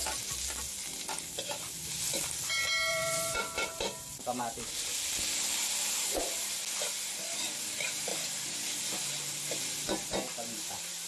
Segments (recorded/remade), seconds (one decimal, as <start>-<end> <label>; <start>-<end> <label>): 0.0-2.9 recorded; 2.9-4.4 remade; 4.4-10.3 recorded; 10.3-11.1 remade